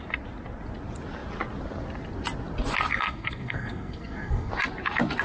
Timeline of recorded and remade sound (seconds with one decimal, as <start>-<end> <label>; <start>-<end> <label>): 0.0-2.9 recorded; 2.9-4.5 remade; 4.5-5.2 recorded